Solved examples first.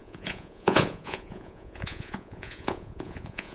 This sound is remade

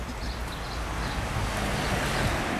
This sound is recorded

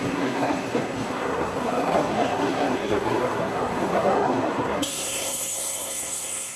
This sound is remade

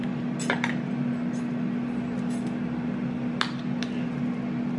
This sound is recorded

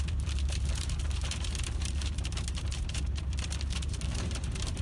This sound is remade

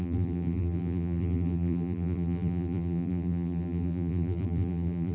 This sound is remade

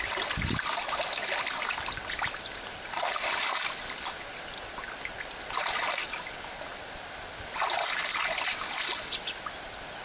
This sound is recorded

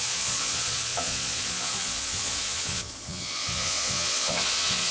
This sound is remade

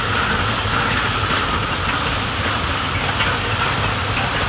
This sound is recorded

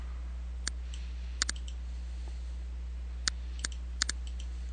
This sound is recorded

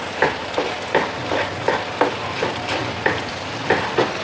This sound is remade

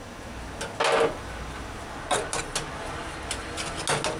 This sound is recorded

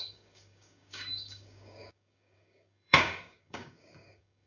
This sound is remade